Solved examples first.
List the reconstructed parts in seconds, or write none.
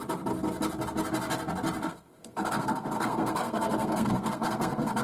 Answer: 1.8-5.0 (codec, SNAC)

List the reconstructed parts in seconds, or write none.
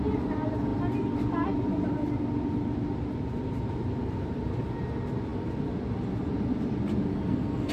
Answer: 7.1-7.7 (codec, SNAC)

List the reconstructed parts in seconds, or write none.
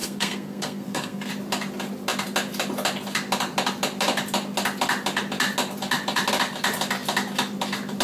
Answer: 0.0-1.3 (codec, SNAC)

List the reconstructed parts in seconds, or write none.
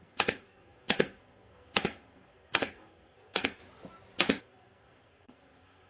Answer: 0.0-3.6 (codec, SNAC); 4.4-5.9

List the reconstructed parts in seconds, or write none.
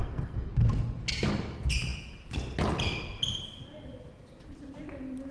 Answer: 0.0-0.5 (codec, SNAC)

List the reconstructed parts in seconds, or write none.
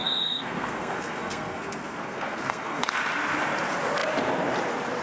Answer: 0.0-3.0 (codec, SNAC)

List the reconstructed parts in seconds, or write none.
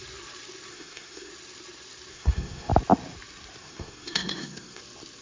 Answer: 0.7-1.3 (codec, SNAC); 2.1-2.7; 3.6-4.8